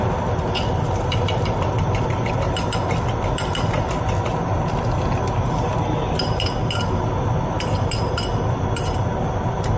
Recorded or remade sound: recorded